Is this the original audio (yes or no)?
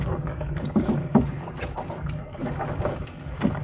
no